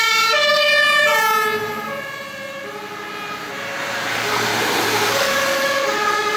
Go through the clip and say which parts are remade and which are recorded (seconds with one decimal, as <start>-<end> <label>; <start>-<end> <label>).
0.0-0.7 remade; 0.7-4.1 recorded; 4.1-4.5 remade; 4.5-5.1 recorded; 5.1-6.4 remade

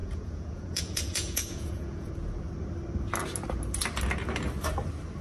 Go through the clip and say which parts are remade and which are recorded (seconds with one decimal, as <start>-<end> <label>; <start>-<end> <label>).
0.0-2.1 remade; 2.1-5.2 recorded